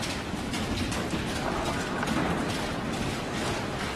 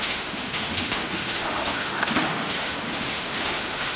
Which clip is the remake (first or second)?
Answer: second